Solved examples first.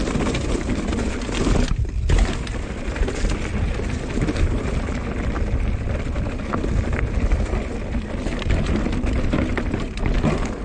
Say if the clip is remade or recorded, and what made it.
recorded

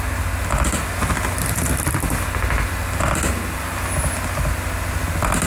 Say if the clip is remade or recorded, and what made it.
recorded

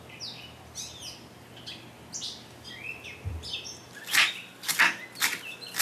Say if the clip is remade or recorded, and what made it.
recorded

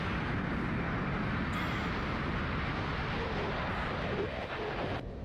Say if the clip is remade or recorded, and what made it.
recorded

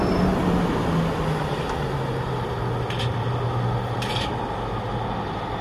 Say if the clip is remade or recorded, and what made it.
recorded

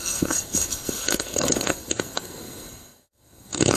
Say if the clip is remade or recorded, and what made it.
remade, codec, SNAC